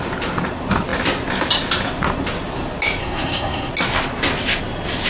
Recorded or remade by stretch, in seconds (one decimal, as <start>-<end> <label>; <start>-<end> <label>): 0.0-3.0 recorded; 3.0-3.7 remade; 3.7-5.1 recorded